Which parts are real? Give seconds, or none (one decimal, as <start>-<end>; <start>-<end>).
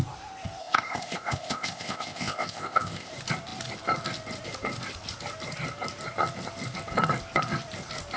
0.0-0.6; 3.1-8.2